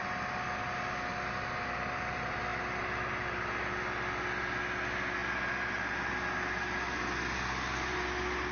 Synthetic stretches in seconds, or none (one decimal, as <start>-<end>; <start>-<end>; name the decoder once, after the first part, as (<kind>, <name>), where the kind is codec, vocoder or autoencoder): none